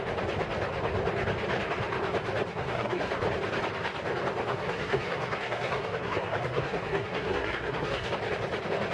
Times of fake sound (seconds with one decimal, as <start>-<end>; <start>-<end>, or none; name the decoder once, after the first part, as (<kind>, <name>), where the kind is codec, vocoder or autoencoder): 2.5-3.1 (codec, SNAC); 4.5-8.1